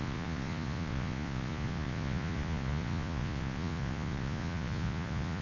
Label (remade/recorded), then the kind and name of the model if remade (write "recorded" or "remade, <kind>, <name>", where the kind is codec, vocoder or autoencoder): remade, vocoder, Vocos